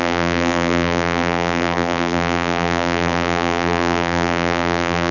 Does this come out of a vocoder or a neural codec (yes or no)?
yes